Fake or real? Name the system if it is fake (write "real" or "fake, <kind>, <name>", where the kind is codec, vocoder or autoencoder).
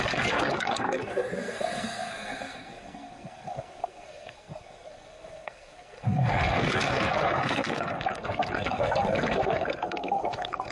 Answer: fake, codec, SNAC